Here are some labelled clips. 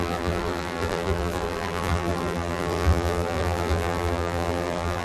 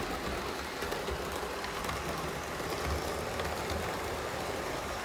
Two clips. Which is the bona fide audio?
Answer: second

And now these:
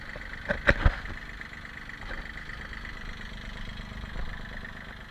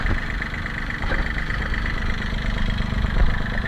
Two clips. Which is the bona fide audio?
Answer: first